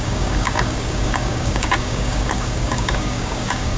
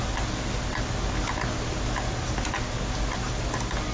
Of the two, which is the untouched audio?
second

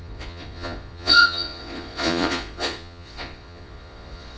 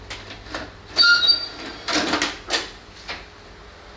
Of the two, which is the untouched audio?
second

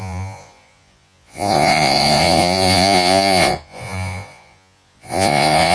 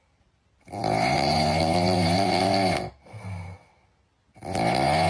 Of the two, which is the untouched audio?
second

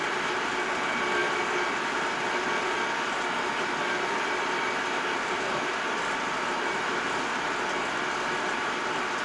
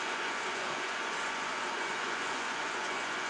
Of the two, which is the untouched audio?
first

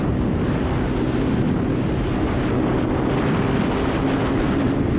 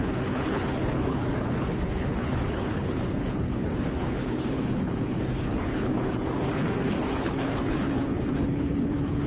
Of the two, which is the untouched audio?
first